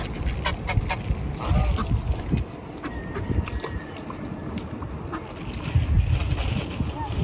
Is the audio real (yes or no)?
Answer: yes